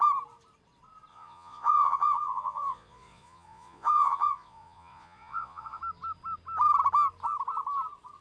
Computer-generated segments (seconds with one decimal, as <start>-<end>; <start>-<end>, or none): 1.1-5.8

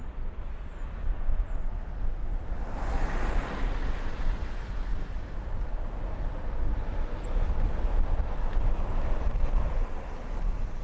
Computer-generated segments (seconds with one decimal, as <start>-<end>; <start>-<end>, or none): none

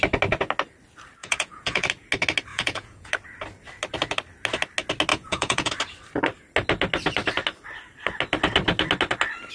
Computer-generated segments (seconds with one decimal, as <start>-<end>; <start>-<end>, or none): 1.2-1.9; 2.5-3.1; 5.1-5.7

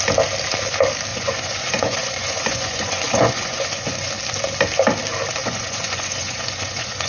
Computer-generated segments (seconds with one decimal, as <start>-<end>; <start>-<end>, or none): 1.1-4.1; 5.4-7.1

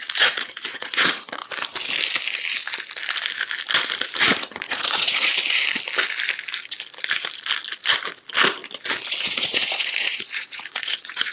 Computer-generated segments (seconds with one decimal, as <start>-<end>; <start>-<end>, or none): 0.0-1.4; 4.2-5.3; 9.2-11.3

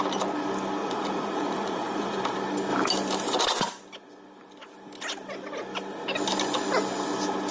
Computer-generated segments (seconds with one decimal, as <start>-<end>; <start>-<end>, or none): 0.8-2.2